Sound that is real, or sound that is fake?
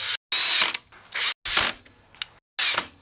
real